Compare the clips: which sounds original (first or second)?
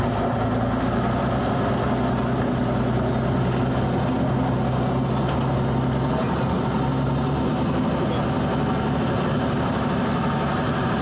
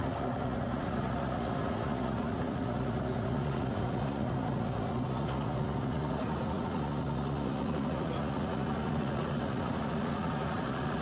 first